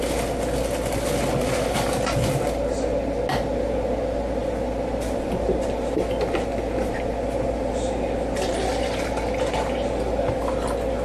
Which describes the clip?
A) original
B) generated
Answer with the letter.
A